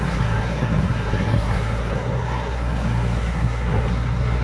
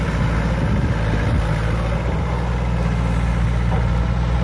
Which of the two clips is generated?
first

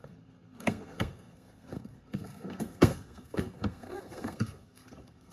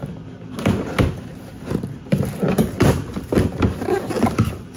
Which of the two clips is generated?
first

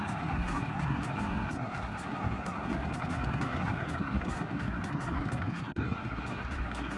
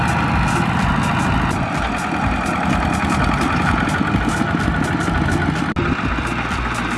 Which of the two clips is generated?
first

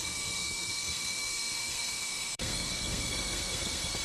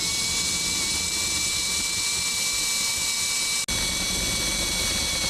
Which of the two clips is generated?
first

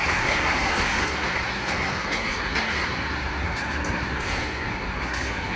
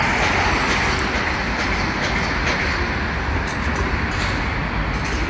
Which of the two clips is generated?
first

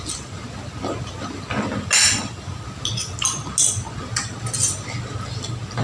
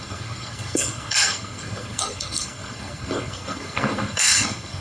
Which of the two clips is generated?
second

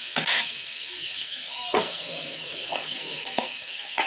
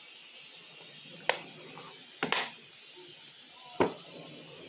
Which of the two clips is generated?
first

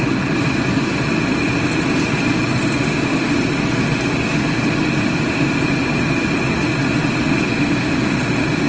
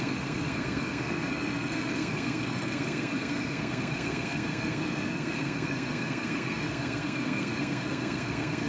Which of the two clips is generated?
second